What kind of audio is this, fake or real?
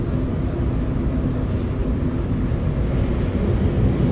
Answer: real